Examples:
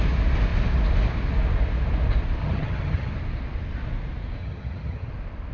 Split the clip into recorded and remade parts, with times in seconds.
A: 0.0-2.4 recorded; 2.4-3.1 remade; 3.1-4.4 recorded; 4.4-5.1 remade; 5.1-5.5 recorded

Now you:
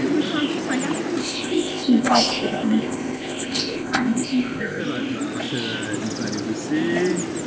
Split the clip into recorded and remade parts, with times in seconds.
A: 0.0-1.2 recorded; 1.2-4.8 remade; 4.8-7.5 recorded

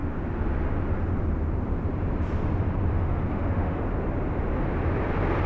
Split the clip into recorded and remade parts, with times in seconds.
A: 0.0-2.9 recorded; 2.9-3.8 remade; 3.8-5.5 recorded

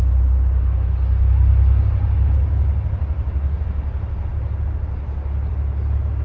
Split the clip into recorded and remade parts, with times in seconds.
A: 0.0-6.2 recorded

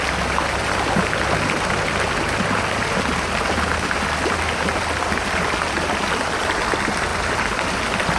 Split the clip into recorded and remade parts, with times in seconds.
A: 0.0-8.2 recorded